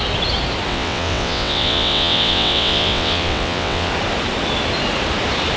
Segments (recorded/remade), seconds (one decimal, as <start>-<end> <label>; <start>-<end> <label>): 0.0-0.7 recorded; 0.7-3.9 remade; 3.9-5.6 recorded